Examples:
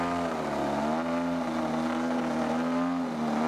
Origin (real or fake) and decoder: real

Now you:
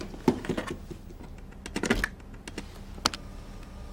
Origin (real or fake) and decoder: real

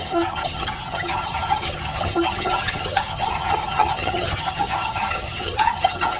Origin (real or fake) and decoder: fake, vocoder, HiFi-GAN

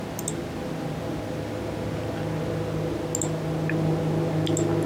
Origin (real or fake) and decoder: real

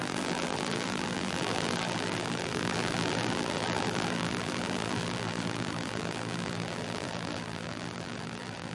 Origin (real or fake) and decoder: fake, vocoder, BigVGAN v2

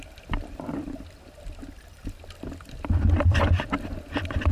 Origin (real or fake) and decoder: fake, vocoder, BigVGAN v2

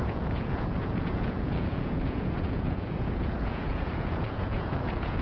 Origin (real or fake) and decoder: fake, vocoder, Vocos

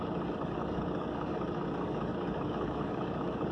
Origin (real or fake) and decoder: fake, codec, DAC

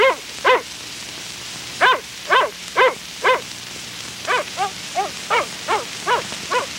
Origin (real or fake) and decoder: real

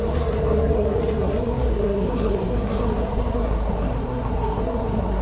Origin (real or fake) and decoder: fake, codec, SNAC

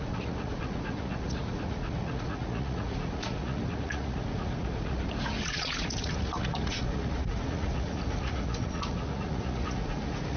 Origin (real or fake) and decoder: fake, vocoder, Vocos